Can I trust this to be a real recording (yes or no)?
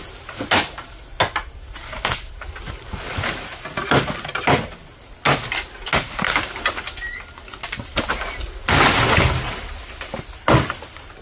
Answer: yes